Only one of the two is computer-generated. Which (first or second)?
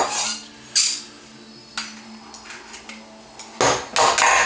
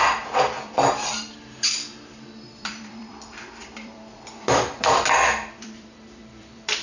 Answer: second